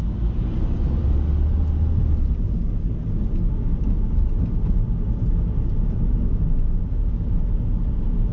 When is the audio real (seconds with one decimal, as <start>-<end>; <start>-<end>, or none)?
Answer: 0.0-8.3